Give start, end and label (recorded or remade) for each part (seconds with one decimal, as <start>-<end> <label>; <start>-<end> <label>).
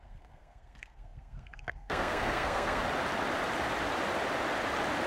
0.0-2.8 remade; 2.8-5.1 recorded